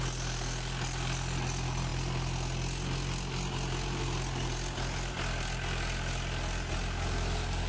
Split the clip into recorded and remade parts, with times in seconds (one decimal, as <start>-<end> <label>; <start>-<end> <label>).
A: 0.0-7.7 recorded